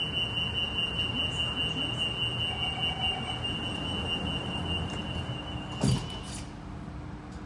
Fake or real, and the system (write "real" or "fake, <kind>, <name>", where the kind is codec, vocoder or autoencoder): real